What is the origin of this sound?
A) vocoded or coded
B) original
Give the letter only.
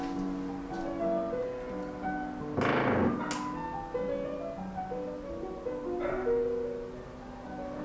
B